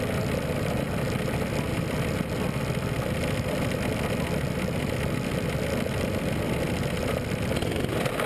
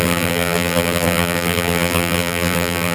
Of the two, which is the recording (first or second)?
first